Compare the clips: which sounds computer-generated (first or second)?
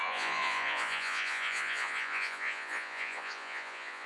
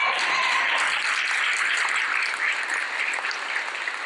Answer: first